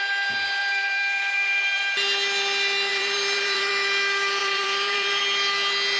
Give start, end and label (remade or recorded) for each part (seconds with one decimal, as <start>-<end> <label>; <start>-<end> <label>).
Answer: 0.0-0.6 recorded; 0.6-1.8 remade; 1.8-2.9 recorded; 2.9-3.7 remade; 3.7-4.4 recorded; 4.4-5.2 remade; 5.2-6.0 recorded